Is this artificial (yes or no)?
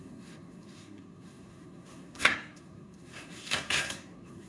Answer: yes